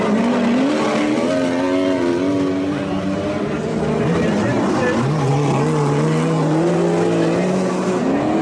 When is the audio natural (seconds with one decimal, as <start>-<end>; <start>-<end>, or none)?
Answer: 0.0-8.4